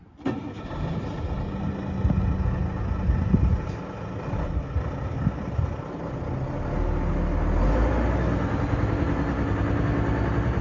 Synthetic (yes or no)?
no